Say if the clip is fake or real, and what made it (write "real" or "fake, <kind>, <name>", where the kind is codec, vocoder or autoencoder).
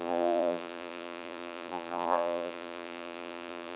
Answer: fake, vocoder, BigVGAN v2